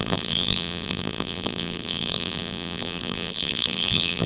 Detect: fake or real fake